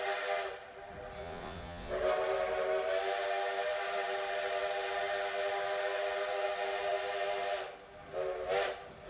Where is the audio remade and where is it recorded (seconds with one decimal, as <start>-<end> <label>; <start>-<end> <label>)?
0.0-1.2 recorded; 1.2-1.9 remade; 1.9-9.1 recorded